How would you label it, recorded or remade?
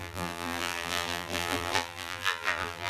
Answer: remade